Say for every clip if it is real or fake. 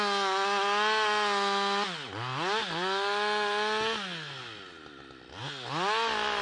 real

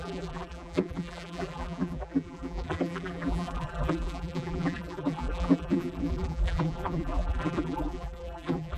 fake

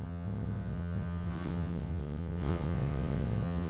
fake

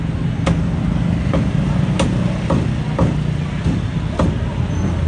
real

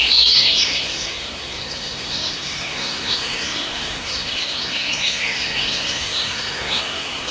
fake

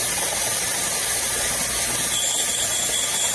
real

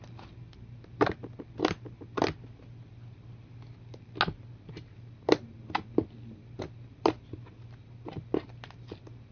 real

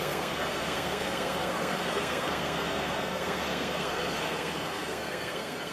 fake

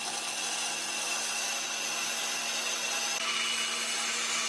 real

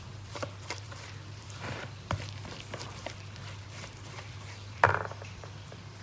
fake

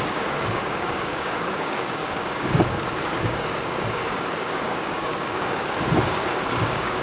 fake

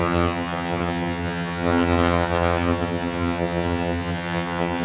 fake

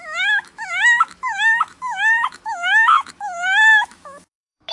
fake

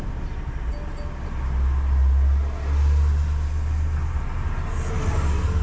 real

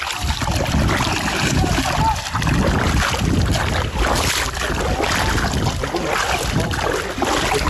real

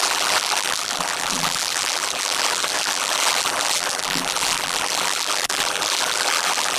fake